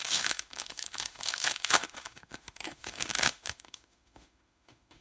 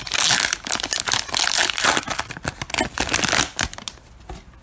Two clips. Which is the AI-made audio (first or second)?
first